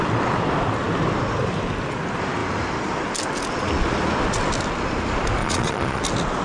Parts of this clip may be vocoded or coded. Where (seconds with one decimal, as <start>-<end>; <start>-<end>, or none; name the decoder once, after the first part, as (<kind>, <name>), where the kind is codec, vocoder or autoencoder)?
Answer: 5.4-6.0 (vocoder, Vocos)